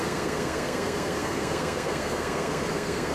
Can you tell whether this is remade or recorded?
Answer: remade